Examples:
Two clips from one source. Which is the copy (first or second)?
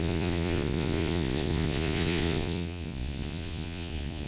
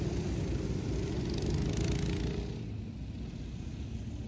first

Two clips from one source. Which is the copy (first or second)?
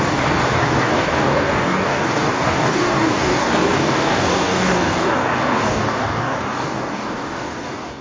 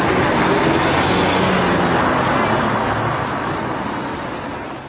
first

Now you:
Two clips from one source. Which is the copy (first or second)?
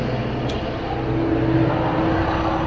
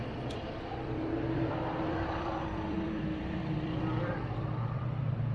second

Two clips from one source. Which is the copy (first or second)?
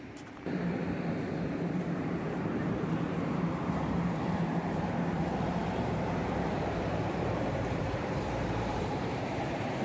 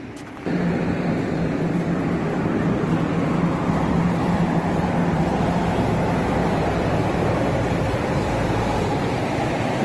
first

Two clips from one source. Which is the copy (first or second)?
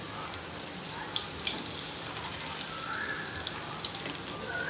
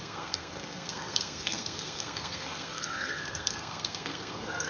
second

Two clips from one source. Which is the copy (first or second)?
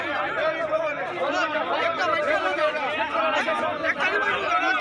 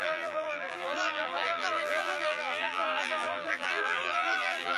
second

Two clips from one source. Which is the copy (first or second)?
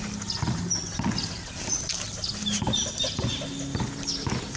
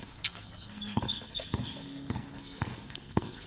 second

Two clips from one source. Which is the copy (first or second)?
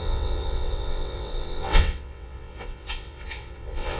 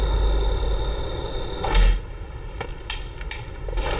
first